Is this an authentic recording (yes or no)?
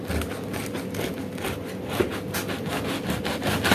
yes